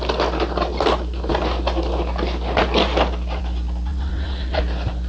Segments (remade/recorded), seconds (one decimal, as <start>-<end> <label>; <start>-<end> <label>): 0.0-3.9 recorded; 3.9-4.6 remade; 4.6-5.1 recorded